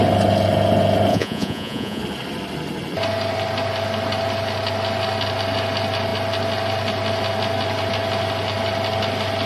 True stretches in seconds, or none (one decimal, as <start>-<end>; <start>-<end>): 0.0-1.1; 2.0-9.5